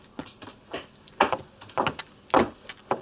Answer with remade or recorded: recorded